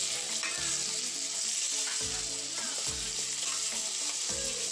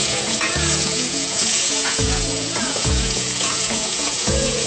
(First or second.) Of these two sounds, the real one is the first